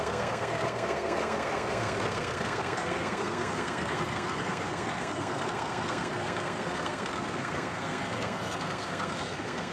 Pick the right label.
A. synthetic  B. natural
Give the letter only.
A